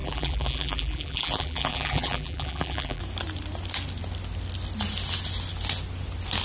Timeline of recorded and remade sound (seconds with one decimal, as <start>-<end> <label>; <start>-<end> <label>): 0.0-3.0 remade; 3.0-6.4 recorded